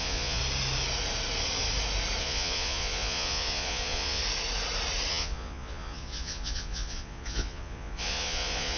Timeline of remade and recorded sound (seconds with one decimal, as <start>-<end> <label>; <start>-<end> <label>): 0.0-0.4 remade; 0.4-2.2 recorded; 2.2-4.2 remade; 4.2-5.1 recorded; 5.1-8.8 remade